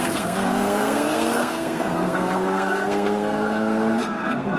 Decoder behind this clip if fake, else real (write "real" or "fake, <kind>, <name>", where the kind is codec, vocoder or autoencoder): fake, codec, SNAC